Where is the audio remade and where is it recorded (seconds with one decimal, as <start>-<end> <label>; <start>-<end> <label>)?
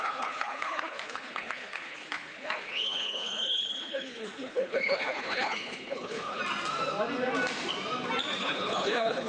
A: 0.0-6.4 remade; 6.4-8.4 recorded; 8.4-9.3 remade